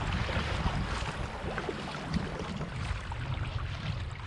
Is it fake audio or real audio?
real